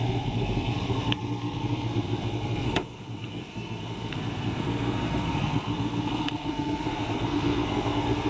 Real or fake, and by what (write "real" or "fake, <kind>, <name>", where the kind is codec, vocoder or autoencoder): fake, codec, SNAC